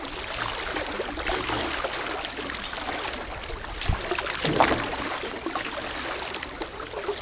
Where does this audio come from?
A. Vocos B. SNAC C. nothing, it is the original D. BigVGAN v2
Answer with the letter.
C